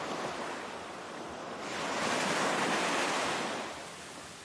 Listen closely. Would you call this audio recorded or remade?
recorded